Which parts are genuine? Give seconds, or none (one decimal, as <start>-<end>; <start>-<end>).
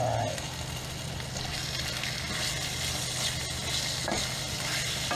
0.0-5.2